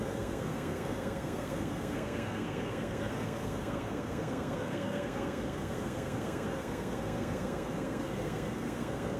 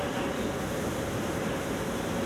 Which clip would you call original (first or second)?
second